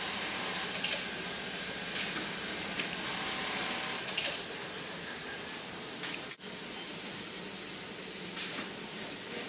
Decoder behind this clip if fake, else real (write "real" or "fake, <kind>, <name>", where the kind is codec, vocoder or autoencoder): real